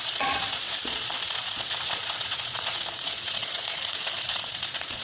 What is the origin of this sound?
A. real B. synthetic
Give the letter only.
B